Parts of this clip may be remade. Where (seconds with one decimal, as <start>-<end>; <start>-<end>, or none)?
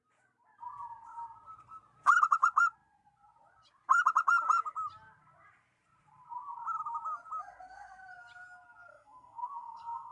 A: 8.9-10.1